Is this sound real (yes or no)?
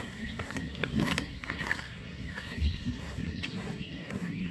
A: no